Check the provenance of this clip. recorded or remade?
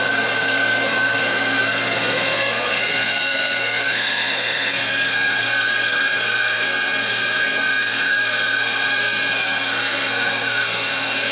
remade